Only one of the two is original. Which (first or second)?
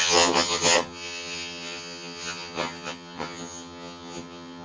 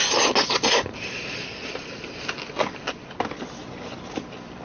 second